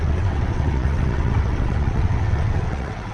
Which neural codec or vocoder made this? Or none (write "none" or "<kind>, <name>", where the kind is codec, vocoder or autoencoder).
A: vocoder, WaveNeXt